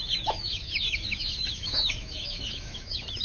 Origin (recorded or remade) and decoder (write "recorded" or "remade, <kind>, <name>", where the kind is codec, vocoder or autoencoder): remade, autoencoder, DAC-VAE